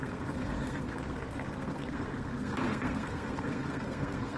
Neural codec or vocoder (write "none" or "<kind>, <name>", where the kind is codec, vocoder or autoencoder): codec, SNAC